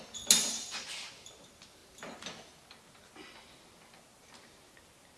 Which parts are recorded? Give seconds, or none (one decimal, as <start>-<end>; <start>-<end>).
0.0-5.2